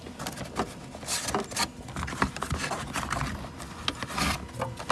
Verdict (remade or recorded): recorded